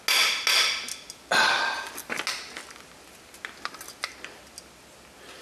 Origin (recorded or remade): recorded